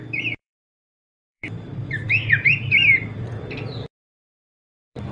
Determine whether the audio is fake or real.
fake